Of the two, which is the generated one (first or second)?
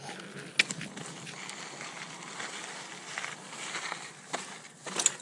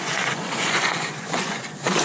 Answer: second